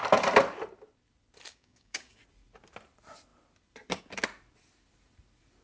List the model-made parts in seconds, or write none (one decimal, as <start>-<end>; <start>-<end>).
1.5-2.2